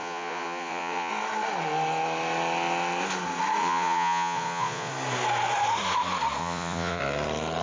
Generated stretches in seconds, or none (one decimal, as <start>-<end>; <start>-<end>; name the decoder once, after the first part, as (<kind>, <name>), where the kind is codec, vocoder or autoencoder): 0.0-1.1 (vocoder, Vocos); 3.6-4.9; 6.4-7.0